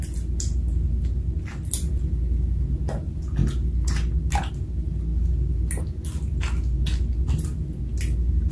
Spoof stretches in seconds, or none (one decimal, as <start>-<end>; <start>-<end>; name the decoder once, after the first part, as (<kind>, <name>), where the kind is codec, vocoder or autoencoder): none